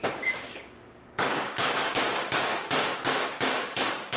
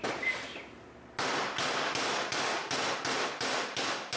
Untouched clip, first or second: second